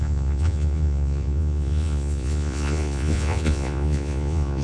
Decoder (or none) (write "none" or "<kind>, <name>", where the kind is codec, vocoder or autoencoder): vocoder, Vocos